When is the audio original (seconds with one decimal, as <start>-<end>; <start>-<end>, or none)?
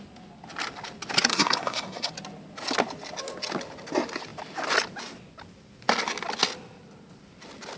0.0-1.3; 2.1-7.8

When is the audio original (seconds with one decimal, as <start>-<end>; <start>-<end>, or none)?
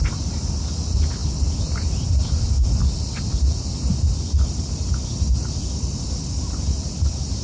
0.0-7.4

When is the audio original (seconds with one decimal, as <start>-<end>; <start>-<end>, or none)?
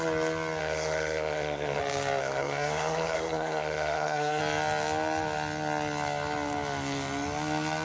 0.0-0.6; 1.8-2.2; 4.4-7.8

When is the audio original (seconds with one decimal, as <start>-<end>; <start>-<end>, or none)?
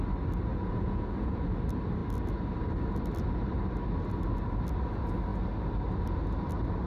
0.0-0.5; 1.6-6.9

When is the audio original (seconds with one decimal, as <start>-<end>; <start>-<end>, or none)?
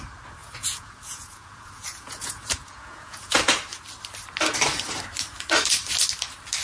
0.0-0.4; 3.4-6.6